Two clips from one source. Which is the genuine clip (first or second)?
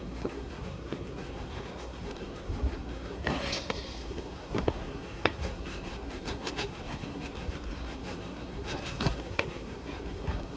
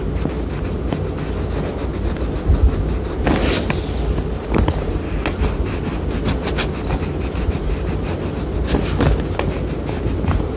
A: second